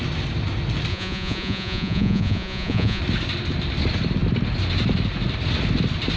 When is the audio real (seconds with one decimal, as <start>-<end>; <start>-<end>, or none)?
0.0-0.9; 3.0-6.2